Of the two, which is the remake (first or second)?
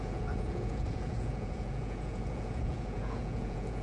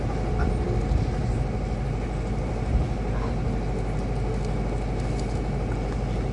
first